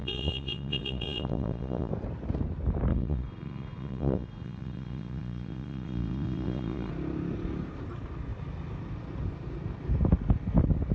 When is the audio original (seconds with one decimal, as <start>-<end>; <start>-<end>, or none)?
1.9-2.9; 6.9-10.9